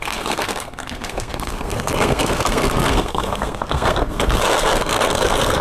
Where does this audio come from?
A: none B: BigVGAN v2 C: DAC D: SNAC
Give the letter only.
D